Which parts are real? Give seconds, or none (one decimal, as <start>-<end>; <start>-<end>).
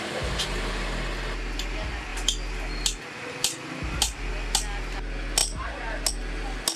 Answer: 0.0-6.8